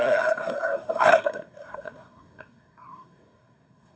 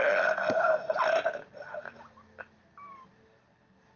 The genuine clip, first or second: second